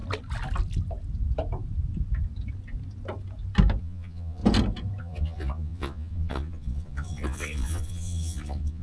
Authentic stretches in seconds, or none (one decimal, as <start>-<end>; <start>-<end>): 0.0-3.8; 4.4-5.0